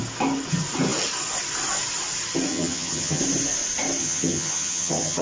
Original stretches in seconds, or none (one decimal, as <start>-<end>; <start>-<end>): 0.0-2.5; 3.2-4.0